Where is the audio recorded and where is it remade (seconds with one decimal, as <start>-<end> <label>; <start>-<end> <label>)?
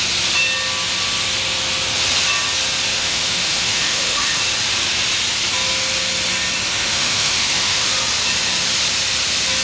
0.0-2.9 recorded; 2.9-4.4 remade; 4.4-6.6 recorded; 6.6-7.9 remade; 7.9-9.6 recorded